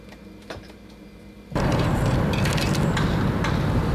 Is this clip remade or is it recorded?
recorded